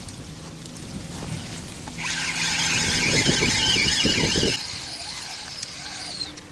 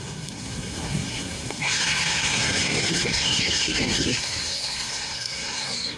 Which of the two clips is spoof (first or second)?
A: second